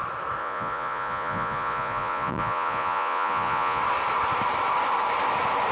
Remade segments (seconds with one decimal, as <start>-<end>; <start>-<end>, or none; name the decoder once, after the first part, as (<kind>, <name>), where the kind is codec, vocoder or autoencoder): 0.4-3.8 (vocoder, Vocos)